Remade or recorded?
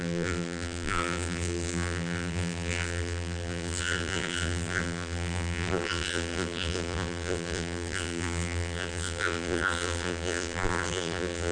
remade